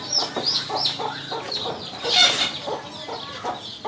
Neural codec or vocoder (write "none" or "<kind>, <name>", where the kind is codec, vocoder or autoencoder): none